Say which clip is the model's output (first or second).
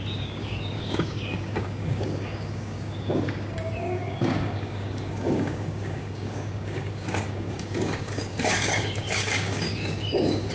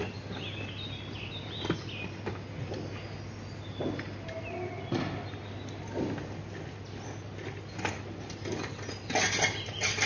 first